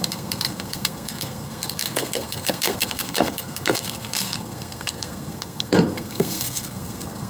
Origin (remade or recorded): remade